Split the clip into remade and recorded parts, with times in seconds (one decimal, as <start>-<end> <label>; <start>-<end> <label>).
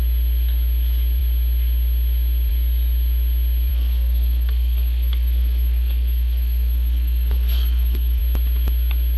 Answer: 0.0-3.7 recorded; 3.7-8.2 remade; 8.2-9.2 recorded